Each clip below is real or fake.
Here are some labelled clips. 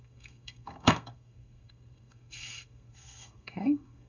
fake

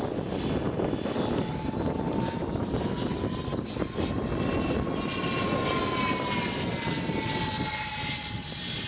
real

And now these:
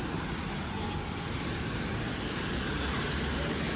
real